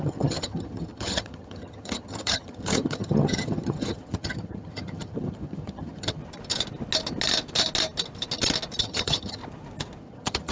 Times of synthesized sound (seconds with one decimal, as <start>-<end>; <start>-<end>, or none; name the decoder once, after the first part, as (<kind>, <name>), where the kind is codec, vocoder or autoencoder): 0.0-6.2 (vocoder, HiFi-GAN); 8.8-9.4; 10.0-10.5